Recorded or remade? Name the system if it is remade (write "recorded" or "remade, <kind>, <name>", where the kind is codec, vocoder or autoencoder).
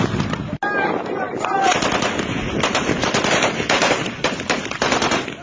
recorded